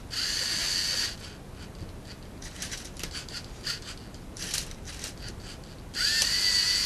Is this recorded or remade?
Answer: recorded